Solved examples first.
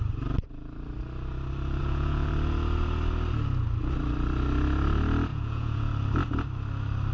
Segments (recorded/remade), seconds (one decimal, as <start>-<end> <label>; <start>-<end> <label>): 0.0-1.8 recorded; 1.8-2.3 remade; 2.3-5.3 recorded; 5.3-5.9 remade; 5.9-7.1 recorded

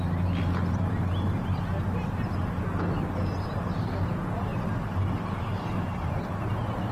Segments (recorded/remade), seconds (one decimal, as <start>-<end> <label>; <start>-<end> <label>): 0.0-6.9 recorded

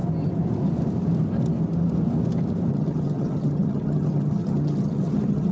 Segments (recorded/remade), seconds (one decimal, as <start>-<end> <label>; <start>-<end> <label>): 0.0-2.7 recorded; 2.7-5.5 remade

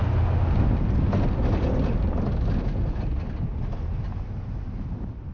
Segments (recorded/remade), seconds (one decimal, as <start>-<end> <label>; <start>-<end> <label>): 0.0-5.3 recorded